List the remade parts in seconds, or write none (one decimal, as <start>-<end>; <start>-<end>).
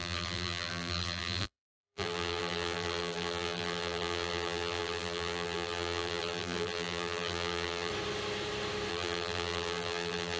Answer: 0.0-7.9; 8.9-10.4